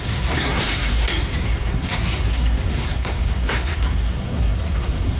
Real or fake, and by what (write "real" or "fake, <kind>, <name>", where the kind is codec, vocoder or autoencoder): fake, codec, SNAC